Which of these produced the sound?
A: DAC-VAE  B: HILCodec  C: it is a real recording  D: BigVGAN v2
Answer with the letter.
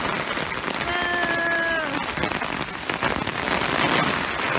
C